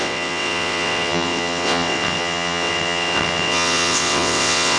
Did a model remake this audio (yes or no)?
yes